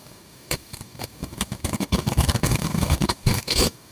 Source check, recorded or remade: remade